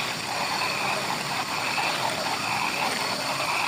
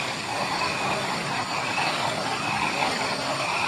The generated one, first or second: second